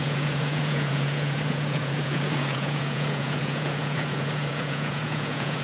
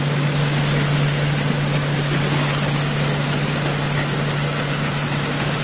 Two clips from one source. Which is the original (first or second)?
second